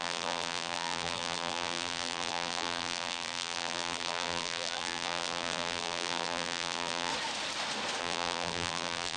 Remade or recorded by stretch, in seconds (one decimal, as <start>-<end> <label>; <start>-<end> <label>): 0.0-7.1 remade; 7.1-8.0 recorded; 8.0-9.2 remade